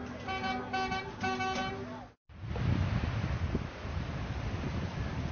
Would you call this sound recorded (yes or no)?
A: yes